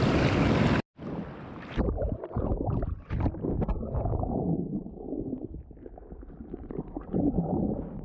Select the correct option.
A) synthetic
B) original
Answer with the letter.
B